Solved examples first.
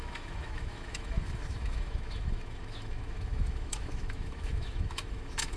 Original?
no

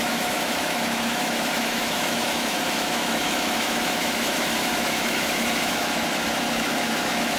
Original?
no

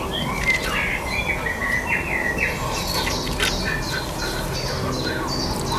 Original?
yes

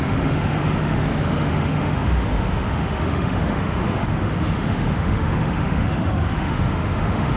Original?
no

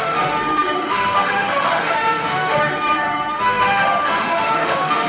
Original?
no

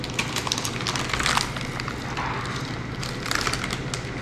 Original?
yes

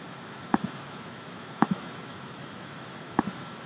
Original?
no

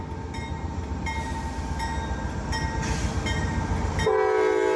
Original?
yes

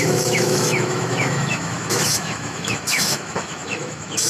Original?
no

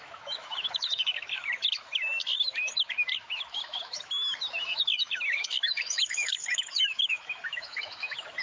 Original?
no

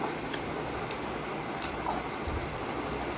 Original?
yes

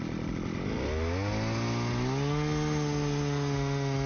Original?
yes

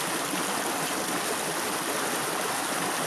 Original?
yes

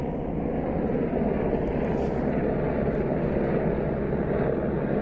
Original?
yes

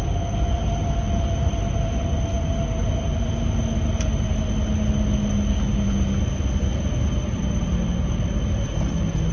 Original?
yes